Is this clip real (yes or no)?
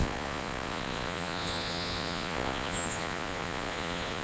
no